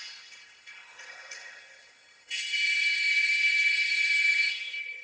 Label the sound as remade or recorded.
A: remade